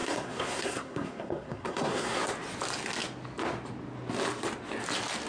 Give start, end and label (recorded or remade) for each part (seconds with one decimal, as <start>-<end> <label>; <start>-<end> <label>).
0.0-2.2 remade; 2.2-5.3 recorded